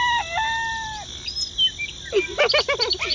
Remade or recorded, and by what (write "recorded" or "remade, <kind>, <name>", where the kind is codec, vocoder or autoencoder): recorded